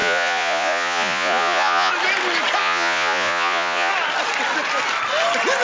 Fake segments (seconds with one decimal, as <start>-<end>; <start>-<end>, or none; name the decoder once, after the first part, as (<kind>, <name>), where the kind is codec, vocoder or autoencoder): 0.0-1.9 (vocoder, Vocos); 2.6-3.9